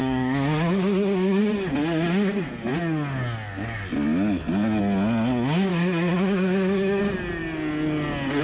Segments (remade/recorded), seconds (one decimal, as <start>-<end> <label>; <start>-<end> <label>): 0.0-1.4 remade; 1.4-5.7 recorded; 5.7-7.0 remade; 7.0-8.4 recorded